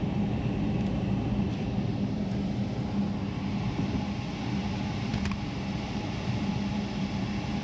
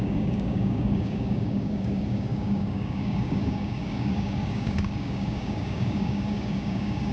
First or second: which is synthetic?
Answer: second